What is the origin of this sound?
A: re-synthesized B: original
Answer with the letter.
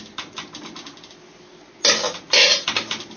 B